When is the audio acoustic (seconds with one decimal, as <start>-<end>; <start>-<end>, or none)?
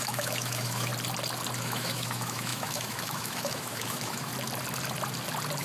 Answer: 0.9-1.6; 4.3-5.6